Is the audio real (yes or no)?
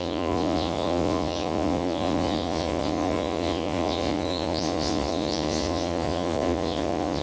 no